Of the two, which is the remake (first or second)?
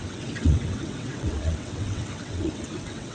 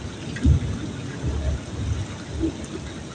first